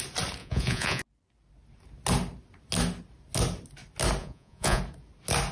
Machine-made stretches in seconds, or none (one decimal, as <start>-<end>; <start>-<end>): 0.4-1.0; 4.2-4.8